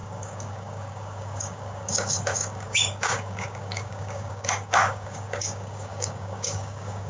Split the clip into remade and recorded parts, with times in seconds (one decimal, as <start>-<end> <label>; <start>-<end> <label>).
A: 0.0-7.1 remade